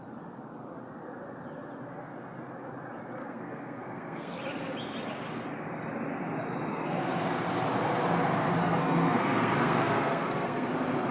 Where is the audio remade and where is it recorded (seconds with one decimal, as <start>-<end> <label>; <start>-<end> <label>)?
0.0-3.2 recorded; 3.2-4.4 remade; 4.4-6.7 recorded; 6.7-7.2 remade; 7.2-8.6 recorded; 8.6-10.7 remade; 10.7-11.1 recorded